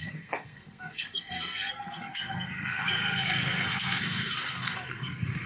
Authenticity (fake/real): fake